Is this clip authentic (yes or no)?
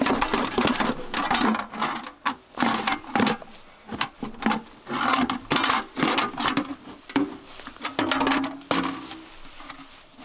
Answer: yes